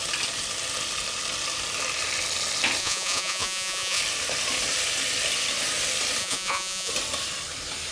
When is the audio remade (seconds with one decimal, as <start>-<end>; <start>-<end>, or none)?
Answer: 2.8-4.0; 6.2-6.9